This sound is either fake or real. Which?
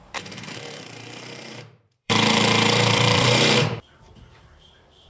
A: fake